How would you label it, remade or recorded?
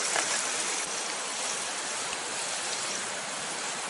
recorded